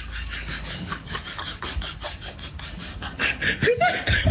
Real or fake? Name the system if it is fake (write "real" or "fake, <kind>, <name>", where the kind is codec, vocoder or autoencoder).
fake, codec, DAC